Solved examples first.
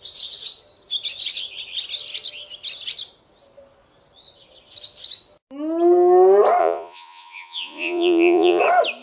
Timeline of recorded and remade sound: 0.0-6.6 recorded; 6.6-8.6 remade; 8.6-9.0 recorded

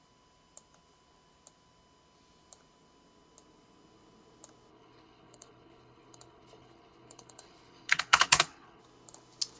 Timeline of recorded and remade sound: 0.0-4.7 recorded; 4.7-8.8 remade; 8.8-9.6 recorded